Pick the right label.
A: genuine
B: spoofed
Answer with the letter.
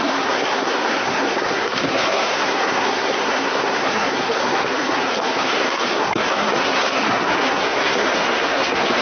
B